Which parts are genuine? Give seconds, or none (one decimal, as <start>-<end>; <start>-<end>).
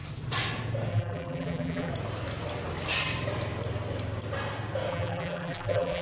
0.0-0.9; 1.9-4.9